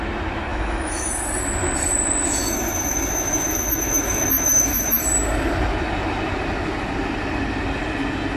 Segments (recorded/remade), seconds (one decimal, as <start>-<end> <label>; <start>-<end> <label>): 0.0-0.5 recorded; 0.5-1.1 remade; 1.1-2.4 recorded; 2.4-5.0 remade; 5.0-8.4 recorded

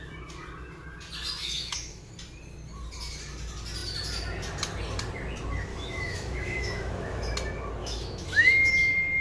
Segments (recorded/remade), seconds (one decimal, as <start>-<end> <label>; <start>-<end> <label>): 0.0-1.4 recorded; 1.4-2.1 remade; 2.1-5.7 recorded; 5.7-7.3 remade; 7.3-7.8 recorded; 7.8-8.7 remade; 8.7-9.2 recorded

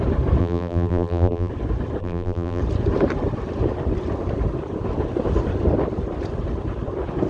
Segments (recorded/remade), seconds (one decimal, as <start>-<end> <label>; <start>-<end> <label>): 0.0-0.4 recorded; 0.4-1.5 remade; 1.5-2.0 recorded; 2.0-2.6 remade; 2.6-7.3 recorded

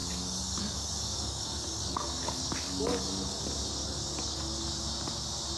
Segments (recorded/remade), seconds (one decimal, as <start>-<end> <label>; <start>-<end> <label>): 0.0-3.4 remade; 3.4-3.8 recorded; 3.8-4.8 remade; 4.8-5.6 recorded

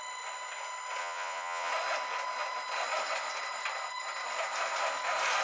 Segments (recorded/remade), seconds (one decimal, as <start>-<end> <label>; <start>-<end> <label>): 0.0-1.0 recorded; 1.0-1.7 remade; 1.7-5.4 recorded